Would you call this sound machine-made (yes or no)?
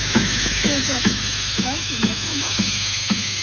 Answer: yes